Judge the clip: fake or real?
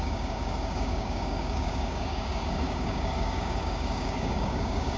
fake